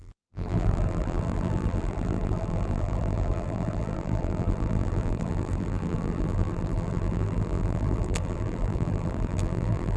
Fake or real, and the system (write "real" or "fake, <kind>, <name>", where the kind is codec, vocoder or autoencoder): fake, vocoder, BigVGAN v2